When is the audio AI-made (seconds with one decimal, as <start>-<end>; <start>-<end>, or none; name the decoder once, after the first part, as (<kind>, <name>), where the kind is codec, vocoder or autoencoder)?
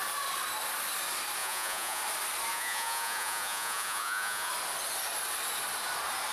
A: 1.4-2.0 (vocoder, Vocos); 2.5-4.5